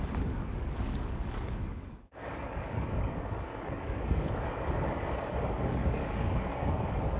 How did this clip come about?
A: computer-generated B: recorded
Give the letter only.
A